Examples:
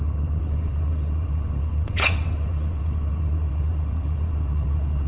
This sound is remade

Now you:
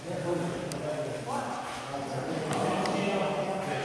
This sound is recorded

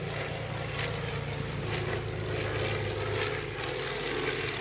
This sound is recorded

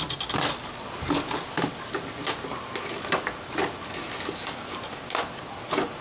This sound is recorded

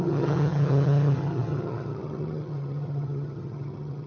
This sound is remade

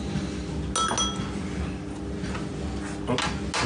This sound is recorded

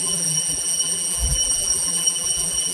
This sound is remade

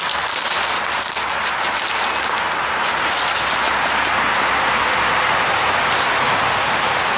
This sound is recorded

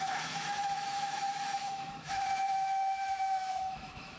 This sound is remade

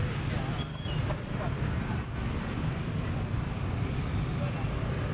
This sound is recorded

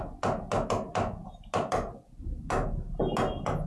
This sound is recorded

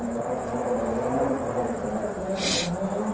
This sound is remade